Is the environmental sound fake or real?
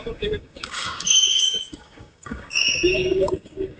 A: fake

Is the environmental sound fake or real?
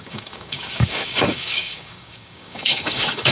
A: fake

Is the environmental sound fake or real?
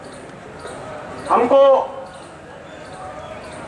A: real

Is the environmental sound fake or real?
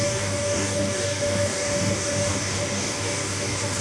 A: fake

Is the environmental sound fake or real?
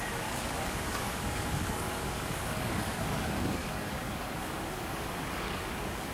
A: fake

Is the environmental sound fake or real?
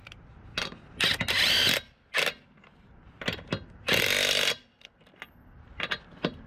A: real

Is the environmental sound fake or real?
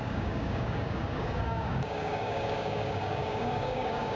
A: fake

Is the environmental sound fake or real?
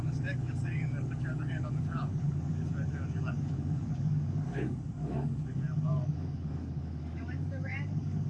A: fake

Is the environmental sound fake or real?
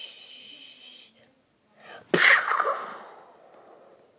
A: real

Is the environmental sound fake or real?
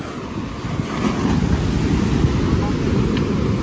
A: real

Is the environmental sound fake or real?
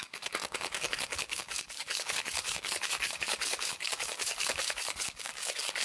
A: fake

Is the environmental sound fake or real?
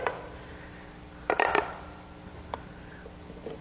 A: real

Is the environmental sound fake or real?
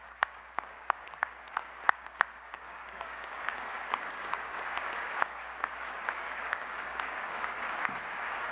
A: fake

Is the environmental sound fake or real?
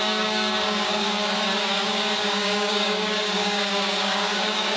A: fake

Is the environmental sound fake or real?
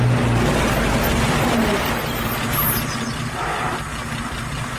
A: real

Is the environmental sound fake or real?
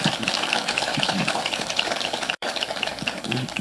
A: fake